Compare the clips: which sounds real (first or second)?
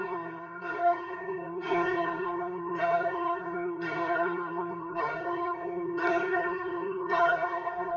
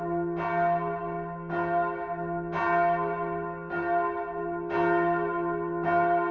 second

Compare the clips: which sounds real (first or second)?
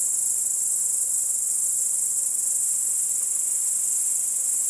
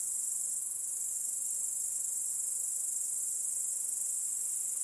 first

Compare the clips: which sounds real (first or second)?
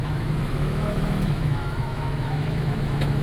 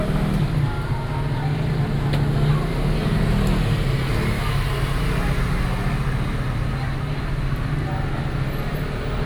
second